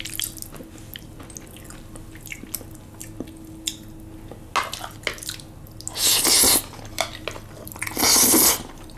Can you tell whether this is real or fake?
real